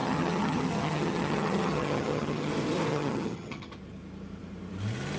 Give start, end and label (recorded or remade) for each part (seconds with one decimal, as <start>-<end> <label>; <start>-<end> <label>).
0.0-2.5 remade; 2.5-2.9 recorded; 2.9-3.7 remade; 3.7-5.2 recorded